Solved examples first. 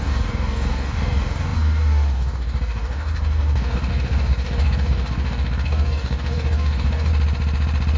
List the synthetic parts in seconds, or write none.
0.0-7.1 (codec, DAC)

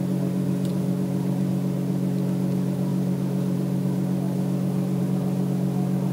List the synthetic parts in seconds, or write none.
0.7-1.5 (vocoder, BigVGAN v2); 2.9-5.0

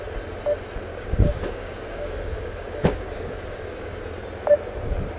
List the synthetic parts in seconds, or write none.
0.9-4.0 (codec, DAC)

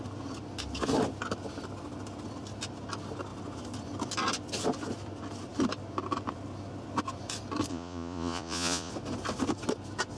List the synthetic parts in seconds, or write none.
7.7-8.9 (vocoder, Vocos)

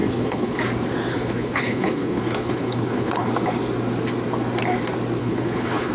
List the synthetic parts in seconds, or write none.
0.0-0.6 (codec, HILCodec); 1.1-3.3; 5.2-5.9